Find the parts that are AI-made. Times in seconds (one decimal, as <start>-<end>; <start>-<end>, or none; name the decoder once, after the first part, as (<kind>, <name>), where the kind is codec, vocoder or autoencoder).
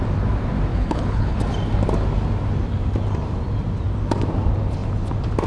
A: 0.7-1.4 (codec, HILCodec)